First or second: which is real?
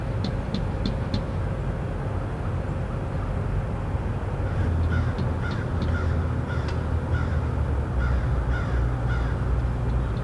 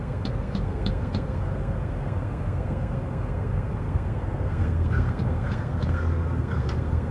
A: first